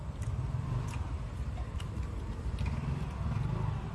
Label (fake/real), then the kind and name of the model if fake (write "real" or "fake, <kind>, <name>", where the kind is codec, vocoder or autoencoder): fake, vocoder, BigVGAN v2